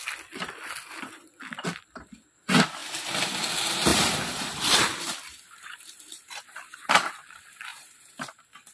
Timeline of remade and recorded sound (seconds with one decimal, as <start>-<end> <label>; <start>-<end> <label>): 0.0-3.9 recorded; 3.9-6.9 remade; 6.9-7.7 recorded; 7.7-8.7 remade